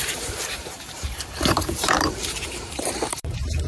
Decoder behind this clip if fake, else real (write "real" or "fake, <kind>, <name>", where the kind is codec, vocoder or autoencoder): fake, vocoder, BigVGAN v2